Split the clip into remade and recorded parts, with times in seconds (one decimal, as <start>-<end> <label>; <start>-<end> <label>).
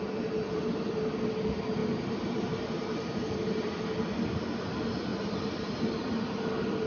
0.0-1.8 recorded; 1.8-3.8 remade; 3.8-6.9 recorded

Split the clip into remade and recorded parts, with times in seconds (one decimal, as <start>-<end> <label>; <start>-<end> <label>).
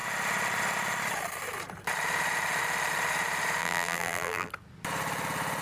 0.0-3.6 recorded; 3.6-4.5 remade; 4.5-5.6 recorded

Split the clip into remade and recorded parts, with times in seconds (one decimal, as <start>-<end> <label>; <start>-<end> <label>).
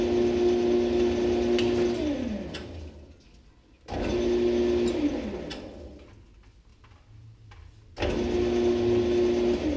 0.0-9.8 recorded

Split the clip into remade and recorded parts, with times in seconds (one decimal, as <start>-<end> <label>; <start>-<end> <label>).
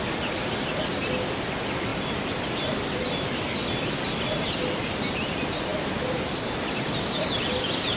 0.0-1.9 recorded; 1.9-3.0 remade; 3.0-5.7 recorded; 5.7-7.6 remade; 7.6-8.0 recorded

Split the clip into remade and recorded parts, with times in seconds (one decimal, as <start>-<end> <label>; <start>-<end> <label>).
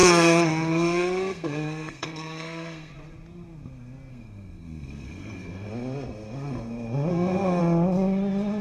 0.0-2.9 remade; 2.9-4.1 recorded; 4.1-5.7 remade; 5.7-7.1 recorded; 7.1-7.6 remade; 7.6-8.6 recorded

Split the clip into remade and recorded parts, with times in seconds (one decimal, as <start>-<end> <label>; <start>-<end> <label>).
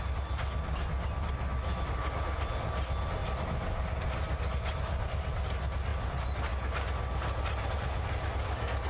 0.0-8.9 recorded